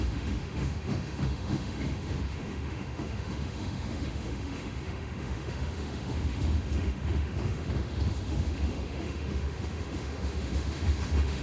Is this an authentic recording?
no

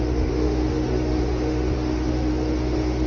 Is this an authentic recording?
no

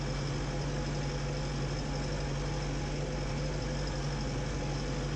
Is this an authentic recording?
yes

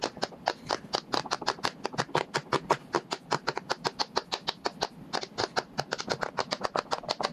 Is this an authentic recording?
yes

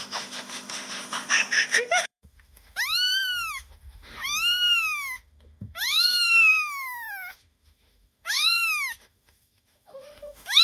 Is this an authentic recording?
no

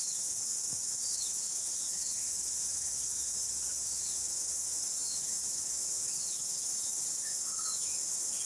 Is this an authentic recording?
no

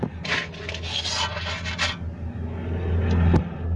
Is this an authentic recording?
yes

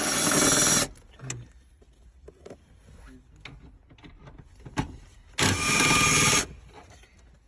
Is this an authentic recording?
yes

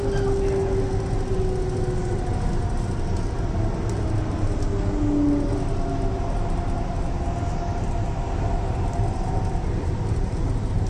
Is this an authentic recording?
yes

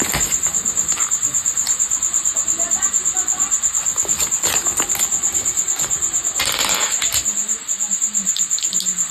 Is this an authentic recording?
yes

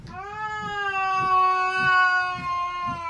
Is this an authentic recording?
yes